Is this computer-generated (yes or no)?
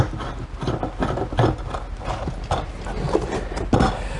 no